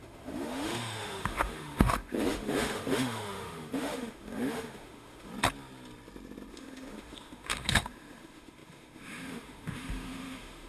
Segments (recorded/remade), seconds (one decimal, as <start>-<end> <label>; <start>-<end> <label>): 0.0-5.3 remade; 5.3-6.5 recorded; 6.5-10.7 remade